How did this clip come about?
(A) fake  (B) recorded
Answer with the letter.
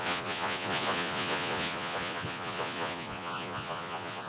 A